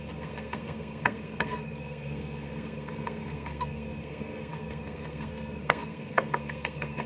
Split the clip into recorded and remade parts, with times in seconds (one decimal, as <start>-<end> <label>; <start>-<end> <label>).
0.0-7.1 remade